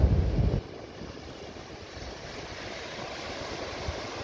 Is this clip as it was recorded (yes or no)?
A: yes